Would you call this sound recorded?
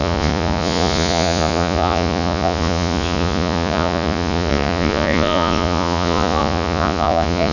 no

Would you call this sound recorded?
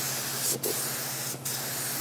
yes